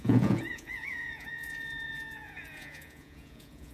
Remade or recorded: remade